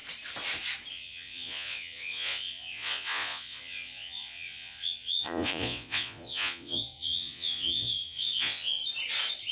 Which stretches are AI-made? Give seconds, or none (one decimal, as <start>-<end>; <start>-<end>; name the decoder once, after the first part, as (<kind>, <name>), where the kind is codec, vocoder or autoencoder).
0.9-8.8 (vocoder, Vocos)